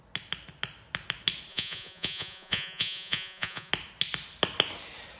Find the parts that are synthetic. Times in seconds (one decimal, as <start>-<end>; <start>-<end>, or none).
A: 1.5-3.7